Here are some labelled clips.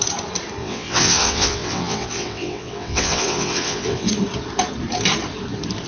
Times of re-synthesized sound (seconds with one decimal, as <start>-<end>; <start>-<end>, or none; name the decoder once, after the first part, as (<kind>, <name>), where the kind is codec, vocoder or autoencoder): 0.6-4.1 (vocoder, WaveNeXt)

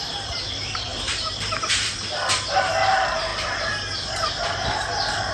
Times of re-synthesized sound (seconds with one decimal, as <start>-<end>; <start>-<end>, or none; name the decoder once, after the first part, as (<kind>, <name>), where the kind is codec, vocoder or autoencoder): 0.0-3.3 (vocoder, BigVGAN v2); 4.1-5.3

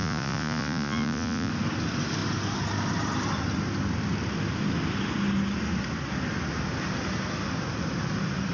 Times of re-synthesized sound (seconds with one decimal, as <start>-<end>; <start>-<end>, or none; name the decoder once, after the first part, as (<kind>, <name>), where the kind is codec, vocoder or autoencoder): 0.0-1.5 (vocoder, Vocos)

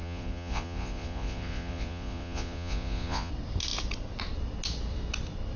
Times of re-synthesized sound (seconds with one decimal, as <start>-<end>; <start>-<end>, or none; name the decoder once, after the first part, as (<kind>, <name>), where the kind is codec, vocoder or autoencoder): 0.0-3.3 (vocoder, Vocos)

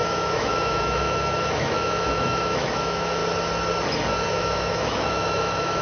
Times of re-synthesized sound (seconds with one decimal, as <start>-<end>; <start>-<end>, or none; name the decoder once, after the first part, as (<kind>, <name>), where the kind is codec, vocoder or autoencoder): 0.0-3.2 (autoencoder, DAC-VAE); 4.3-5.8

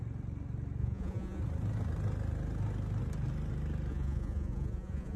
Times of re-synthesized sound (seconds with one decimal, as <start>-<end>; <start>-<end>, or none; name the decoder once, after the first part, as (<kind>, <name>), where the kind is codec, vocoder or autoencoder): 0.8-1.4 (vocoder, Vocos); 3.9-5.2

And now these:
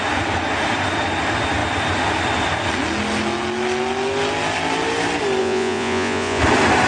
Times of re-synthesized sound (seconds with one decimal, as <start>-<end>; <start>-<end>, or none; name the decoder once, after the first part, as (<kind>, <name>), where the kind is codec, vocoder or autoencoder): 5.4-6.4 (vocoder, Vocos)